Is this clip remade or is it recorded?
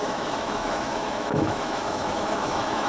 remade